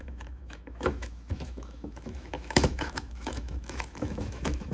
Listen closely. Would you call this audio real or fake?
fake